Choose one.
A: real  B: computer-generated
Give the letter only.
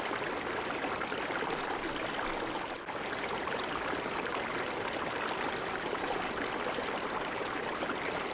A